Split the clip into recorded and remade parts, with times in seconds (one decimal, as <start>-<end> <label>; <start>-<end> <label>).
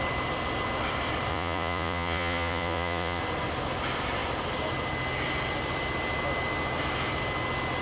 0.0-1.3 recorded; 1.3-3.2 remade; 3.2-7.8 recorded